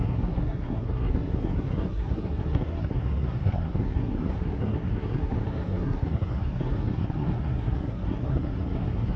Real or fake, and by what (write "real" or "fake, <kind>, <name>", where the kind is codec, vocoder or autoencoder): fake, codec, SNAC